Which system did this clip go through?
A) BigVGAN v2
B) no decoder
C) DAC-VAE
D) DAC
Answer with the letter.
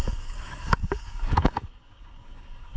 D